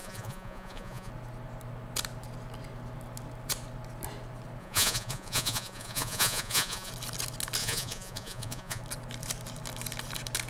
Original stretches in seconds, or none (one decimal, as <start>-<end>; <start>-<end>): 1.1-4.6; 6.9-7.6; 8.8-10.5